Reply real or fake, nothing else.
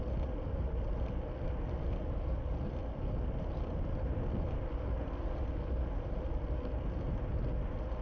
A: real